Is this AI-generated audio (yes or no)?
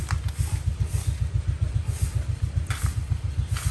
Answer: no